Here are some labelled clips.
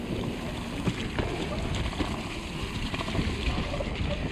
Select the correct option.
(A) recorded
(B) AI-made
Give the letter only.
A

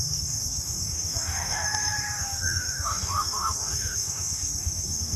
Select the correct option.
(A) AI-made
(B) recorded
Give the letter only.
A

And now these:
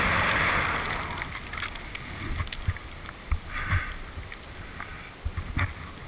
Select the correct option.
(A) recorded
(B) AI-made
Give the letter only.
A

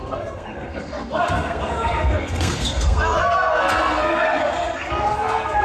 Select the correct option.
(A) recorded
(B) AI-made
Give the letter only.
B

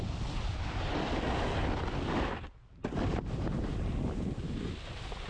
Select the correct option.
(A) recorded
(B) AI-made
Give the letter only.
A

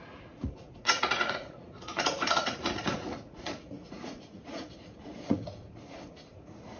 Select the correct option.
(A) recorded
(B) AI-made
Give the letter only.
B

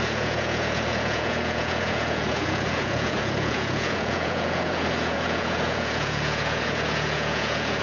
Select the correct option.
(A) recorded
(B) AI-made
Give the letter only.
B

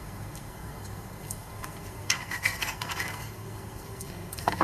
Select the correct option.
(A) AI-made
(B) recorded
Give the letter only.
A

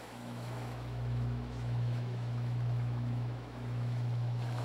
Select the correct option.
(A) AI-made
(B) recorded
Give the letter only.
A